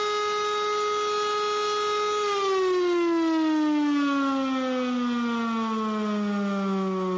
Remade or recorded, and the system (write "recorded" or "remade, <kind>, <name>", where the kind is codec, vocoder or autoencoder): recorded